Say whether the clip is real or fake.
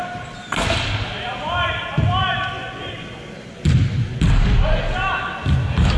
real